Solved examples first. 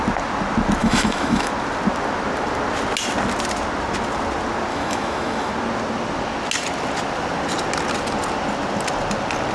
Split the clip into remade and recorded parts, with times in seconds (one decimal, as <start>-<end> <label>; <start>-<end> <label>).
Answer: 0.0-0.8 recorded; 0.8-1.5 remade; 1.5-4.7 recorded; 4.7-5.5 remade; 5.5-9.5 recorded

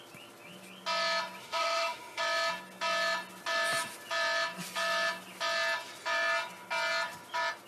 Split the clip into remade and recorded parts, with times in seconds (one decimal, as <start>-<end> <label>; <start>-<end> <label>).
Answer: 0.0-1.4 recorded; 1.4-2.2 remade; 2.2-7.7 recorded

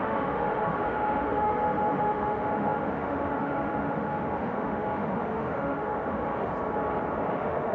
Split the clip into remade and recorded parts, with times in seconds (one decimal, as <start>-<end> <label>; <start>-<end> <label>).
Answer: 0.0-6.5 remade; 6.5-7.3 recorded; 7.3-7.7 remade

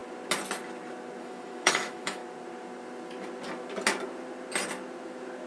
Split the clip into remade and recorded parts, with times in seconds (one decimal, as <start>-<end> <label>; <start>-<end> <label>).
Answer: 0.0-1.2 recorded; 1.2-2.2 remade; 2.2-5.5 recorded

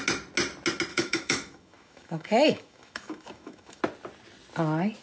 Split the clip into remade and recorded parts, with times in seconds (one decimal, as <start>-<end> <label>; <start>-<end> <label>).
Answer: 0.0-0.9 recorded; 0.9-3.8 remade; 3.8-5.0 recorded

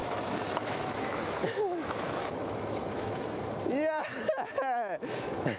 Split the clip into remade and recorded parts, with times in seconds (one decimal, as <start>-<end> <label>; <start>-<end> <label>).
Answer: 0.0-3.4 remade; 3.4-4.0 recorded; 4.0-5.6 remade

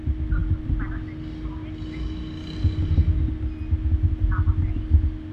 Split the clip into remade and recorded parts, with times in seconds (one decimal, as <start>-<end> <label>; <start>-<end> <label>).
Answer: 0.0-5.3 recorded

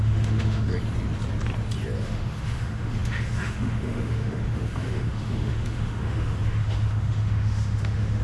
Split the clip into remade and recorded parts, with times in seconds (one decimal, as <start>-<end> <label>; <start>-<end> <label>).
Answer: 0.0-0.7 remade; 0.7-2.0 recorded; 2.0-8.2 remade